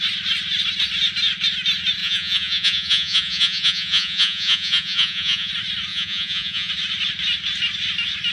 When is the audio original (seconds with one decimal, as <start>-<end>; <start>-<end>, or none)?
0.0-2.0; 5.5-5.9; 6.7-8.3